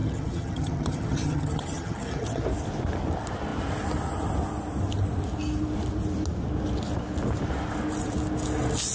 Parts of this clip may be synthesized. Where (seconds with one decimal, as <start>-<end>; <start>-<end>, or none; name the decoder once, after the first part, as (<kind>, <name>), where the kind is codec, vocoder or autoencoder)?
0.0-2.4 (vocoder, HiFi-GAN)